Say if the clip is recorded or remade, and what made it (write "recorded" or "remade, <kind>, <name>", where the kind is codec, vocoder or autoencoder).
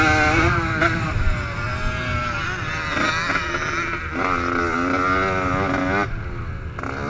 recorded